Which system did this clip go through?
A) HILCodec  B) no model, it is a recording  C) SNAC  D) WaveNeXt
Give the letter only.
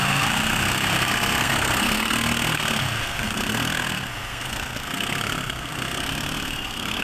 C